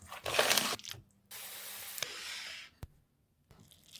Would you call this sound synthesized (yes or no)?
no